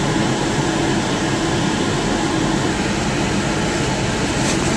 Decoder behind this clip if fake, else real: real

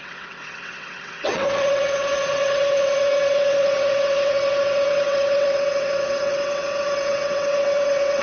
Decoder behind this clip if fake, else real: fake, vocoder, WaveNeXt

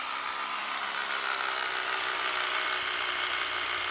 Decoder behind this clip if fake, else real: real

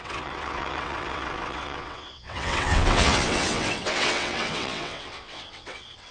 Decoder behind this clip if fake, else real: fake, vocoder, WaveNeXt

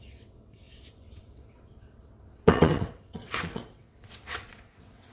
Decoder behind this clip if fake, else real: fake, vocoder, WaveNeXt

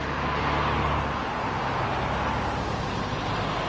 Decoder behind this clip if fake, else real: real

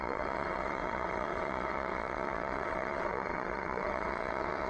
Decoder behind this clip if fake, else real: fake, vocoder, WaveNeXt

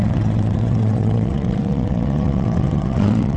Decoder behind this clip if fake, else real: fake, vocoder, WaveNeXt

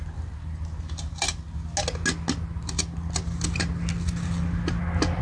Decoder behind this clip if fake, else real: real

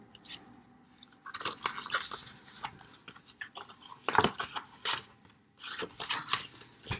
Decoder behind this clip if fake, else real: real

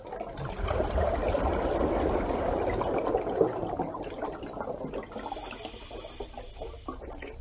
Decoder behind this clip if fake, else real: real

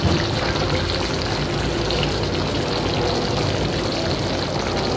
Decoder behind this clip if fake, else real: real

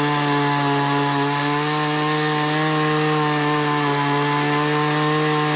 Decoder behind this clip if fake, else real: real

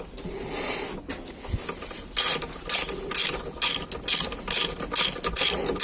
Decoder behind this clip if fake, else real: real